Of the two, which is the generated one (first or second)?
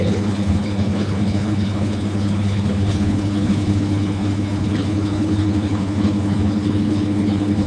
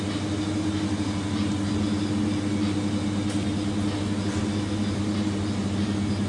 first